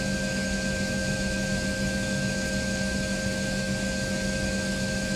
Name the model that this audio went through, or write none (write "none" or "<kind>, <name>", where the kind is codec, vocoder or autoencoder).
autoencoder, DAC-VAE